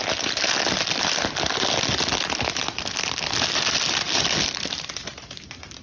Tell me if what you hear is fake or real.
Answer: real